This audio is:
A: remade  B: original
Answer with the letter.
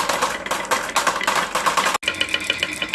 B